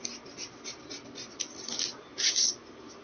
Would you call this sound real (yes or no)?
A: yes